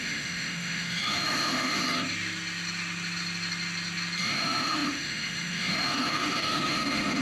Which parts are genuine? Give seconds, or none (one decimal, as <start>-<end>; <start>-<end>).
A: 1.8-4.2